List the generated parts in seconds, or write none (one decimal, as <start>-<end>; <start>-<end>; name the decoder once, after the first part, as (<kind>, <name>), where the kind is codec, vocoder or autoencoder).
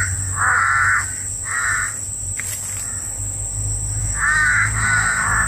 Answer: 4.0-4.5 (codec, DAC)